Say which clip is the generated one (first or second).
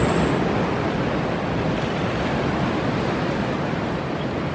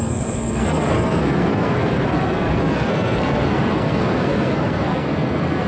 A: second